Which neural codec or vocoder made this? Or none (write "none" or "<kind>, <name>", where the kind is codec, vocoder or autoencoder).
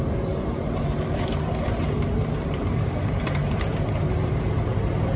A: vocoder, BigVGAN v2